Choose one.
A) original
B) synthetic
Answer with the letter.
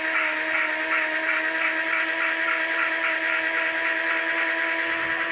A